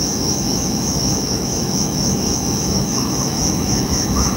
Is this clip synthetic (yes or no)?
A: yes